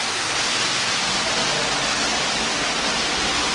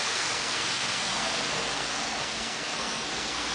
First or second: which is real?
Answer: first